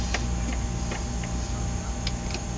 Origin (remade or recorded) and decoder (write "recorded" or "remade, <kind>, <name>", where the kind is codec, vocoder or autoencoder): recorded